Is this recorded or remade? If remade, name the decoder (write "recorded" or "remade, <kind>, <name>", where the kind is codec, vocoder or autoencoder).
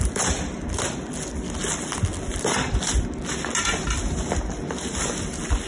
recorded